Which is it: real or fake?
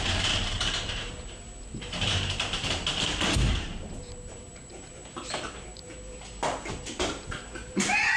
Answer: fake